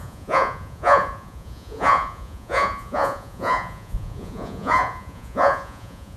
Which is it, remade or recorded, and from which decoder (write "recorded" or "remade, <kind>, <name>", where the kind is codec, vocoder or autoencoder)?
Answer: remade, vocoder, Vocos